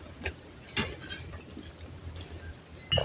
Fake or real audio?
real